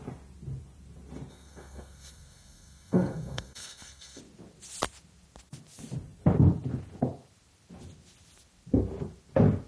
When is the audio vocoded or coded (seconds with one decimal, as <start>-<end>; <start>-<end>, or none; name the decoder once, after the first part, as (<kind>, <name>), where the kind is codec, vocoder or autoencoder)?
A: 1.3-4.2 (codec, SNAC)